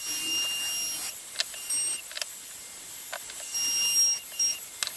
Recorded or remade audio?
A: recorded